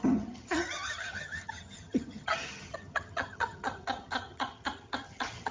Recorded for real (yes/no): no